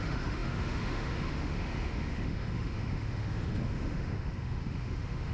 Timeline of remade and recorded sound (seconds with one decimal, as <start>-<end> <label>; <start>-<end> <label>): 0.0-5.3 remade

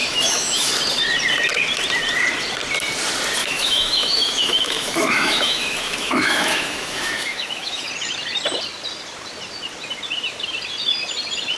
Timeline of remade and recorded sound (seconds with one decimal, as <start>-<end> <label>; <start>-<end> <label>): 0.0-0.7 remade; 0.7-3.4 recorded; 3.4-7.9 remade; 7.9-11.6 recorded

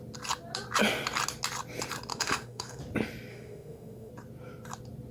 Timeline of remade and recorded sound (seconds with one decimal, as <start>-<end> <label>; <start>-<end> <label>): 0.0-2.1 recorded; 2.1-2.8 remade; 2.8-3.3 recorded; 3.3-4.1 remade; 4.1-5.1 recorded

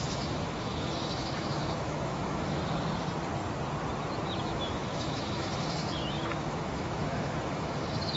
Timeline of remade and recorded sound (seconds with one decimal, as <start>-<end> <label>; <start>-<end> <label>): 0.0-2.6 remade; 2.6-4.4 recorded; 4.4-8.2 remade

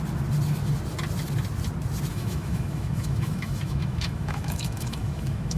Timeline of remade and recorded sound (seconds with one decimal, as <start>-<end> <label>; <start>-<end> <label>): 0.0-2.1 recorded; 2.1-5.6 remade

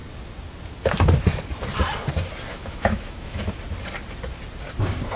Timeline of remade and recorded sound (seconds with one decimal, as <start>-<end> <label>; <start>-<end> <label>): 0.0-2.5 recorded; 2.5-3.5 remade; 3.5-5.2 recorded

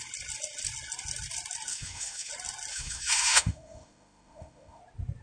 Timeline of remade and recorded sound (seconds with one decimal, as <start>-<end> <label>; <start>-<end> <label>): 0.0-1.7 recorded; 1.7-2.3 remade; 2.3-2.7 recorded; 2.7-4.8 remade; 4.8-5.2 recorded